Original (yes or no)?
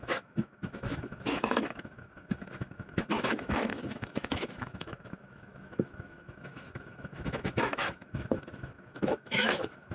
no